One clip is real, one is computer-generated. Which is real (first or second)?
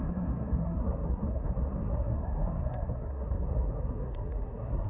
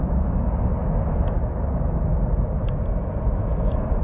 second